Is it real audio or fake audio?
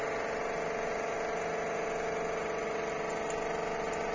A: real